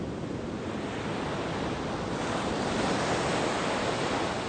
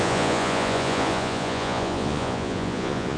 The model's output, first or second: second